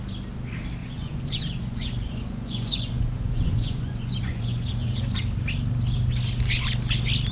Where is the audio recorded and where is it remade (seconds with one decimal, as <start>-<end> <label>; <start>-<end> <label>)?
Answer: 0.0-0.8 recorded; 0.8-5.0 remade; 5.0-7.3 recorded